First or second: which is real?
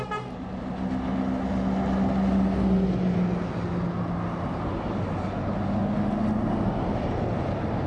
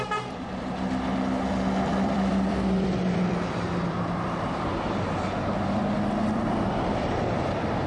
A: first